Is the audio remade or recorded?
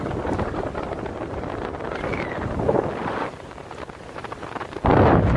recorded